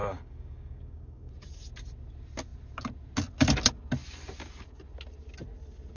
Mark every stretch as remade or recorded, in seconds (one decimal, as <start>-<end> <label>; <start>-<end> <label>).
0.0-1.3 remade; 1.3-6.0 recorded